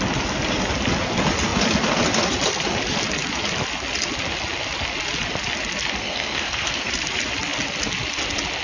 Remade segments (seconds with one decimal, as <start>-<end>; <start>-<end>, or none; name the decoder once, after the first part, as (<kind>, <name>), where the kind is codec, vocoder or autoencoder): 6.0-6.9 (codec, SNAC)